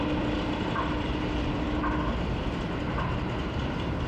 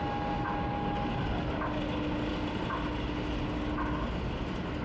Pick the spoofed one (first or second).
first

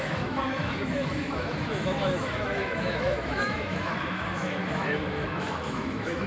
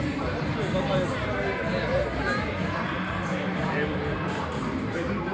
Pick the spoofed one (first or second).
first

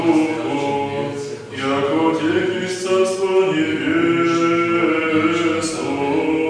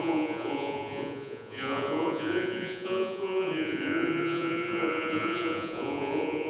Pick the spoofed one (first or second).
second